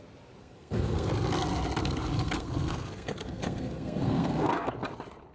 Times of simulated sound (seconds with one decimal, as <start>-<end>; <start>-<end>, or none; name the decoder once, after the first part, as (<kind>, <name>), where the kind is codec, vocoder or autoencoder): 0.4-1.1 (codec, SNAC); 1.8-4.7